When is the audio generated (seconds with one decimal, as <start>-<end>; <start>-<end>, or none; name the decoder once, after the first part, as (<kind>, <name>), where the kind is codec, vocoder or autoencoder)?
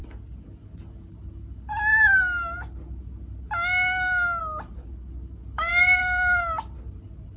5.7-6.4 (vocoder, BigVGAN v2)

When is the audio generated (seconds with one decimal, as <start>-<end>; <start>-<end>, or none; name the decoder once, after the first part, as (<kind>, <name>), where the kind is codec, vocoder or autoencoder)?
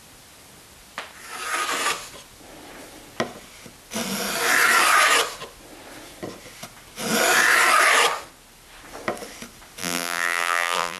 9.8-11.0 (vocoder, BigVGAN v2)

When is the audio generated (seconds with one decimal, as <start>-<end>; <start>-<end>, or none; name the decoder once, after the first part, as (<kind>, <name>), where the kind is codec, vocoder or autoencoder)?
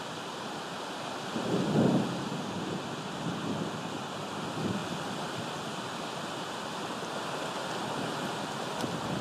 none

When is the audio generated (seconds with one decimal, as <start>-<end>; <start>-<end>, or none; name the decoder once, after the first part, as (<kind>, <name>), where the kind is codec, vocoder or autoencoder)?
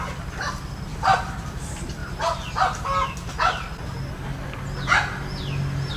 0.9-1.6 (vocoder, BigVGAN v2); 2.0-2.5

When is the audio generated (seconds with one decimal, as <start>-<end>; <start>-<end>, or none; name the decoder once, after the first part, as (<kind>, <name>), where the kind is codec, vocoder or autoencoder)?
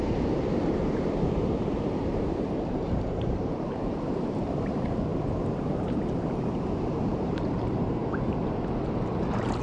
0.0-8.0 (vocoder, BigVGAN v2)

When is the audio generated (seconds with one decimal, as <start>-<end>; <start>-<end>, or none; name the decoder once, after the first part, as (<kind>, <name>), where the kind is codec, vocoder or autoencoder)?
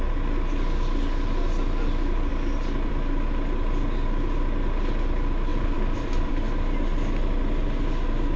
5.5-6.3 (vocoder, BigVGAN v2)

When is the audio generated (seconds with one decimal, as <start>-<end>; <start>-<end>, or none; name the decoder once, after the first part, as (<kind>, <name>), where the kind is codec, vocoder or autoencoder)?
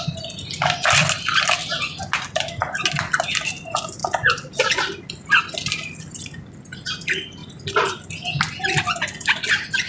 none